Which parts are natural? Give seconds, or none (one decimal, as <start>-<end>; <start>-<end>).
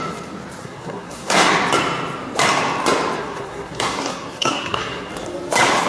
0.0-0.6; 1.5-3.2; 5.1-5.9